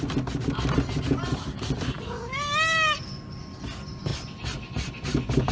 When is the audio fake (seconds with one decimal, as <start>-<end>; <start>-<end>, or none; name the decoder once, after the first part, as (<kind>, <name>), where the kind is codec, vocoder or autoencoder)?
none